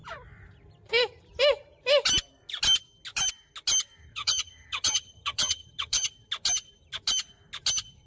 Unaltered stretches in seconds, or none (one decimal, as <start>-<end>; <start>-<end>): 0.0-4.1; 6.1-8.1